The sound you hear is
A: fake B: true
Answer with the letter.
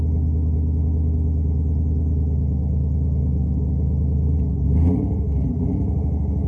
B